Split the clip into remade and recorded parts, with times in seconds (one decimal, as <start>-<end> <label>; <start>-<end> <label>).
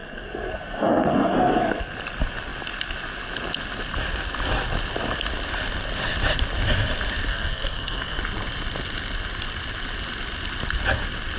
0.0-1.9 remade; 1.9-7.3 recorded; 7.3-8.2 remade; 8.2-11.4 recorded